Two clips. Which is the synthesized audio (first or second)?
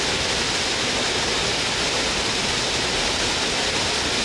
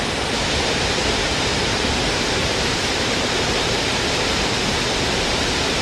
second